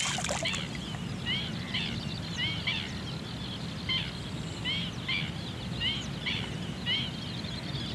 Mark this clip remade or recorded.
recorded